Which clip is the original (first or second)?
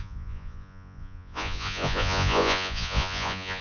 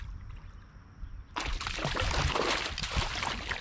second